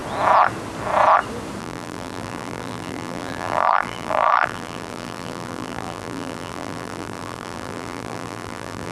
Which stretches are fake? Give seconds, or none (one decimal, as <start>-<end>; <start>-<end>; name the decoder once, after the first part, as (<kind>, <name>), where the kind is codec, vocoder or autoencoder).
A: 1.6-8.9 (vocoder, BigVGAN v2)